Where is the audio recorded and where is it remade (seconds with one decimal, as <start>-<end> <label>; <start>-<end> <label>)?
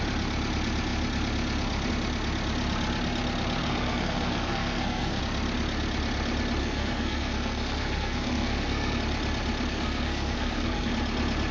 0.0-3.6 recorded; 3.6-5.2 remade; 5.2-6.6 recorded; 6.6-9.0 remade; 9.0-9.7 recorded; 9.7-10.9 remade; 10.9-11.5 recorded